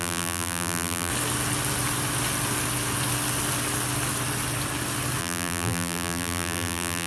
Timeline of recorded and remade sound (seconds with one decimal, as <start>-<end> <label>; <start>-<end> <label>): 0.0-1.1 remade; 1.1-5.2 recorded; 5.2-7.1 remade